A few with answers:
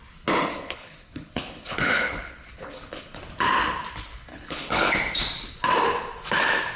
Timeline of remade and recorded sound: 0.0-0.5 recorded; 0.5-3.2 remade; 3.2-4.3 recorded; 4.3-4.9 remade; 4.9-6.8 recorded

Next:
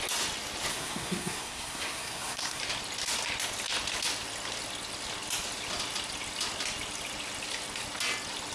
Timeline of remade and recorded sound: 0.0-0.7 recorded; 0.7-2.6 remade; 2.6-8.5 recorded

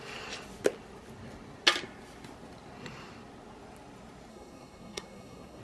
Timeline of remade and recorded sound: 0.0-4.3 recorded; 4.3-5.6 remade

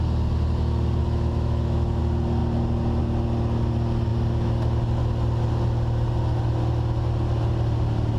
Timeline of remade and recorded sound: 0.0-1.0 recorded; 1.0-2.0 remade; 2.0-8.2 recorded

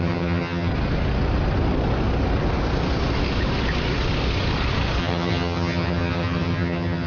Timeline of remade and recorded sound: 0.0-0.7 remade; 0.7-5.0 recorded; 5.0-7.1 remade

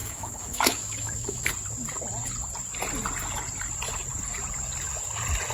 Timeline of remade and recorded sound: 0.0-1.5 remade; 1.5-5.5 recorded

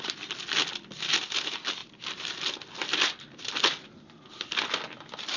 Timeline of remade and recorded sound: 0.0-5.4 recorded

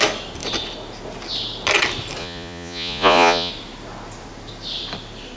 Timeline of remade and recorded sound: 0.0-2.2 recorded; 2.2-3.5 remade; 3.5-5.4 recorded